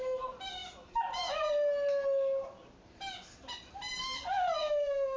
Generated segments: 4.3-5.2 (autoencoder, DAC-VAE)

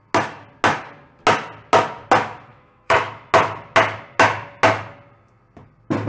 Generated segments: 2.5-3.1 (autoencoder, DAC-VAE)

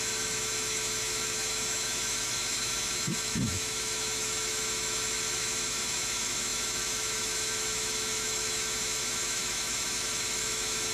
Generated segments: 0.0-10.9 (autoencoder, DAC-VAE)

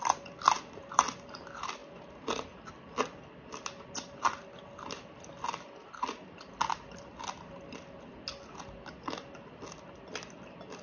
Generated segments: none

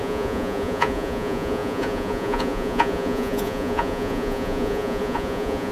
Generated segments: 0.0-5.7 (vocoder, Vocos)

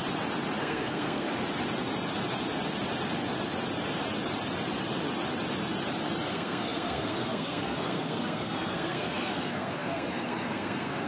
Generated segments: 0.6-1.3 (codec, SNAC); 6.3-11.1

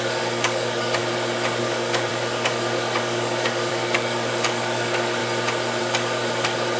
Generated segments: 0.0-1.0 (codec, DAC); 1.6-5.2; 5.8-6.8

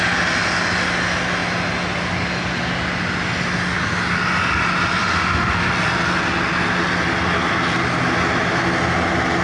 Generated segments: 5.0-5.7 (autoencoder, DAC-VAE)